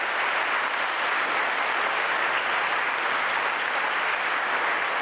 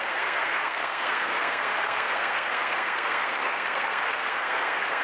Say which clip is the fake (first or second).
second